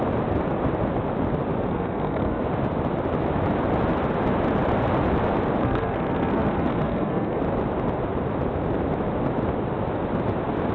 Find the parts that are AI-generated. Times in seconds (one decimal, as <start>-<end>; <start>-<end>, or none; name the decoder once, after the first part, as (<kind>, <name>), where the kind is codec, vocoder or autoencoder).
1.7-2.4 (codec, SNAC); 5.6-7.4